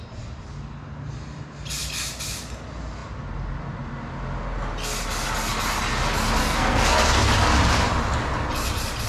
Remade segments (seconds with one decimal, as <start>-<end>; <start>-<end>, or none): 6.4-7.3